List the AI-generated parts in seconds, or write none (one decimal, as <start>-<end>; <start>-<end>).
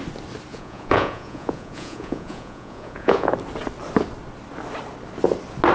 0.5-3.3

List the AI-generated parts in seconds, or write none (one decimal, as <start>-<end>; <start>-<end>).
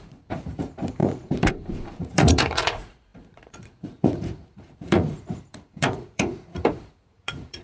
0.0-7.6